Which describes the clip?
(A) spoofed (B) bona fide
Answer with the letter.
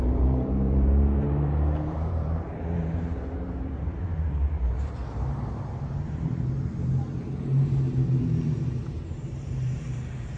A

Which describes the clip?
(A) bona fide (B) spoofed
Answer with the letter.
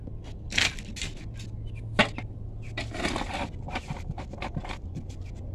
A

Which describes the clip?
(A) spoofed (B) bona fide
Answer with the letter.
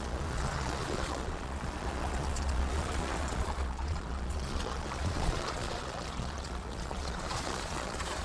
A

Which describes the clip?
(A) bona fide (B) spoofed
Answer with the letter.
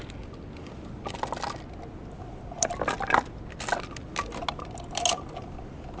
A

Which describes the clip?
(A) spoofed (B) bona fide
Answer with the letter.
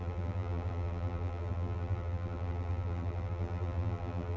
A